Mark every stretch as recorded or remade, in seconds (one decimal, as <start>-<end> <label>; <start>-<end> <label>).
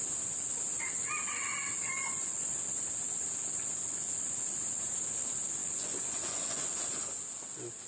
0.0-1.7 recorded; 1.7-2.6 remade; 2.6-5.6 recorded; 5.6-6.8 remade; 6.8-7.9 recorded